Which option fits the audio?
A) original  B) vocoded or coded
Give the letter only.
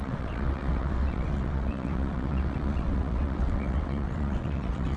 B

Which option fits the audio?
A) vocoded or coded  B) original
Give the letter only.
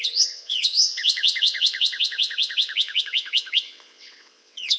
A